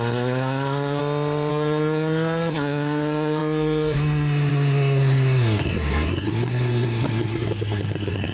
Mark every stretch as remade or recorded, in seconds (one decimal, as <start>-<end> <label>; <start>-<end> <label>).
0.0-1.0 remade; 1.0-1.5 recorded; 1.5-8.3 remade